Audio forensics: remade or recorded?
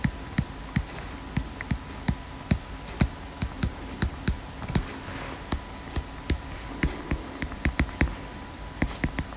recorded